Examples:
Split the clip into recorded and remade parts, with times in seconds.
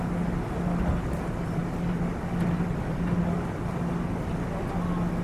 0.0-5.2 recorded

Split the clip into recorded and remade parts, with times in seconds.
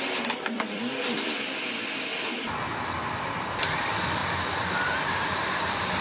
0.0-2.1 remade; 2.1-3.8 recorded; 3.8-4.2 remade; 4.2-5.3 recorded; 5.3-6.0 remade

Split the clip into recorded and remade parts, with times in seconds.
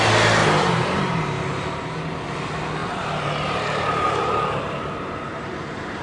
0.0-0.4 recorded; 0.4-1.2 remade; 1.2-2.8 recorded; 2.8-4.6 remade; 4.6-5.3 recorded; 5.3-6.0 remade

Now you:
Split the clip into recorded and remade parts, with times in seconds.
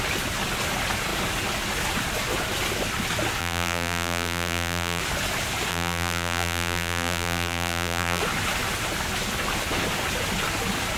0.0-3.4 recorded; 3.4-5.0 remade; 5.0-5.7 recorded; 5.7-8.2 remade; 8.2-11.0 recorded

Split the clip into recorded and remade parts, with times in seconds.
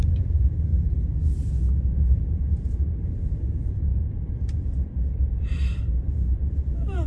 0.0-7.1 remade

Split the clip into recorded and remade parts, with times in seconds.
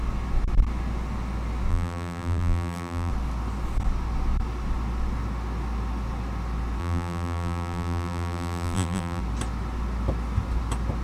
0.0-1.7 recorded; 1.7-3.1 remade; 3.1-6.8 recorded; 6.8-9.2 remade; 9.2-11.0 recorded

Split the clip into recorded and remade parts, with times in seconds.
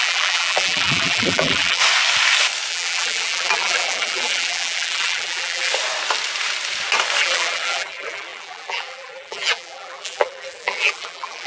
0.0-1.8 remade; 1.8-2.7 recorded; 2.7-5.7 remade; 5.7-7.2 recorded; 7.2-11.5 remade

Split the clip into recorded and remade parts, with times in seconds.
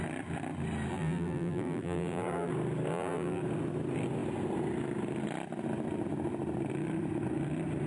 0.0-0.9 recorded; 0.9-2.5 remade; 2.5-2.9 recorded; 2.9-3.4 remade; 3.4-7.9 recorded